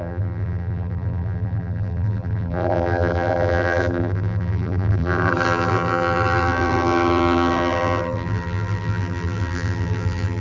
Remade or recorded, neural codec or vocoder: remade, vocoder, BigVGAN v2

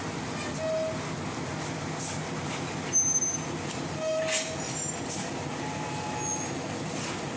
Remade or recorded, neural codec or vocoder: recorded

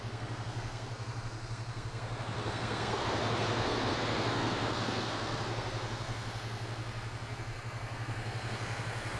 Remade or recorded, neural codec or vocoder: remade, codec, SNAC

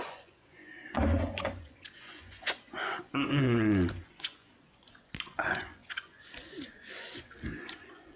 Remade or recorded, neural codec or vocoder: remade, vocoder, Vocos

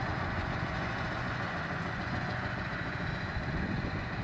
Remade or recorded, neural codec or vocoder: remade, vocoder, Vocos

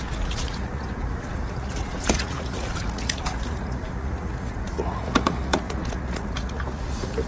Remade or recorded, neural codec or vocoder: remade, vocoder, Vocos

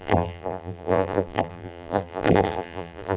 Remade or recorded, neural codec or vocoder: remade, vocoder, BigVGAN v2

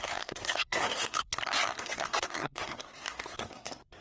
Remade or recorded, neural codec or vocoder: remade, codec, SNAC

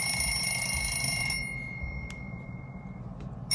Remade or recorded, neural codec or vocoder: recorded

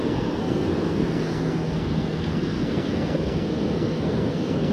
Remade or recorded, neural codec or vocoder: remade, codec, SNAC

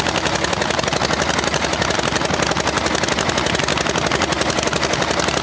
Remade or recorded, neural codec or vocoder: recorded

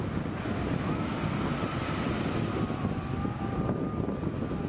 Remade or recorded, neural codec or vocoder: recorded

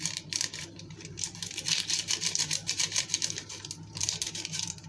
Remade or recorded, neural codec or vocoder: remade, vocoder, BigVGAN v2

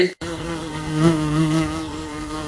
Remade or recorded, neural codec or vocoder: remade, codec, SNAC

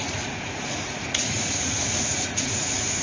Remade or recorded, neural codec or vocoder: remade, vocoder, Vocos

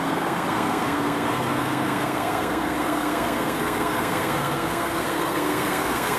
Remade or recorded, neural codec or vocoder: remade, codec, SNAC